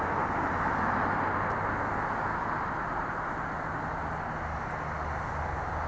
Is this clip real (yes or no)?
yes